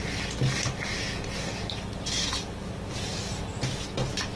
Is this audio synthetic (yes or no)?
no